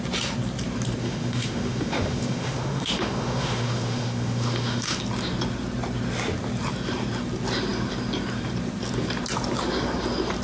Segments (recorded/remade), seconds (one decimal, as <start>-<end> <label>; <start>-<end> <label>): 0.0-1.0 recorded; 1.0-5.0 remade; 5.0-10.4 recorded